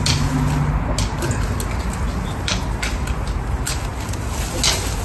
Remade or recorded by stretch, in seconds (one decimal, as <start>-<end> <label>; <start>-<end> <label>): 0.0-5.0 recorded